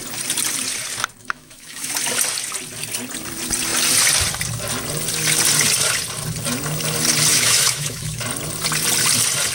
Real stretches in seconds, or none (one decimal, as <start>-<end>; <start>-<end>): 0.0-1.2; 1.9-7.3; 8.2-9.5